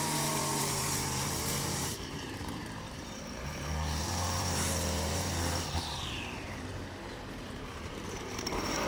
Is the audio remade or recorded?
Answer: remade